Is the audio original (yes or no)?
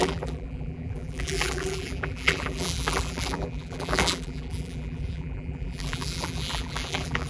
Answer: no